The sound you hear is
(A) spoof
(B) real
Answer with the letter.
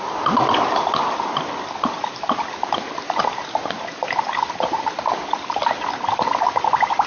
B